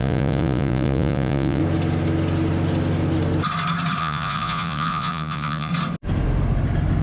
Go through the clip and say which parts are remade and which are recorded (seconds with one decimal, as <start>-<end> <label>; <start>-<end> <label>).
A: 0.0-1.6 remade; 1.6-4.0 recorded; 4.0-5.7 remade; 5.7-7.0 recorded